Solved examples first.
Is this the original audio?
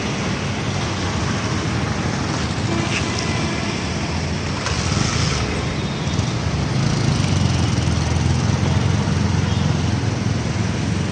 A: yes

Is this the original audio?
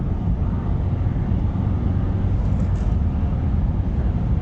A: yes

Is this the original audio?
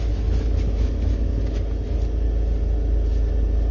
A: yes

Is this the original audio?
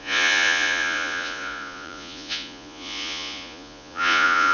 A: no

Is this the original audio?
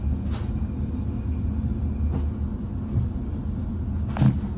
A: yes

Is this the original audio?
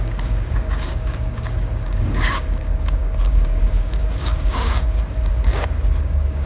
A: no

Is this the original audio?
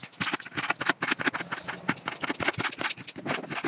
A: yes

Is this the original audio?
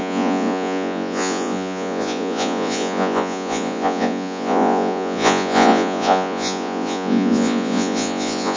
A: no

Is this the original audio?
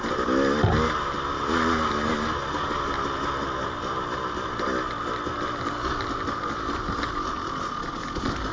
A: yes